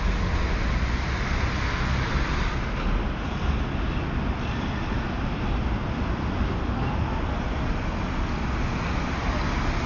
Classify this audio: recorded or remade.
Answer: recorded